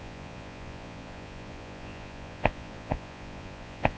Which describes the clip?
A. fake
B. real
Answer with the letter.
A